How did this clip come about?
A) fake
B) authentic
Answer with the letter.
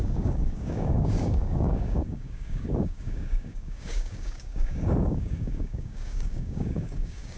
A